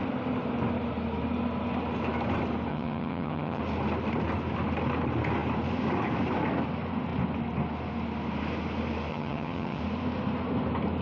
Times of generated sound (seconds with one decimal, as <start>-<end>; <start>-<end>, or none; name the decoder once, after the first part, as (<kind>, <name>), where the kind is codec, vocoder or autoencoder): 2.7-3.6 (vocoder, HiFi-GAN); 9.1-9.8